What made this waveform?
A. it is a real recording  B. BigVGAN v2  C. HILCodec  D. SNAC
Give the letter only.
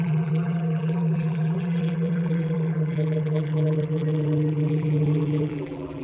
B